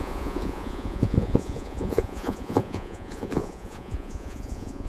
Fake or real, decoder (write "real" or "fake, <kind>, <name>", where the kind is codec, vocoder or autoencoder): fake, vocoder, Vocos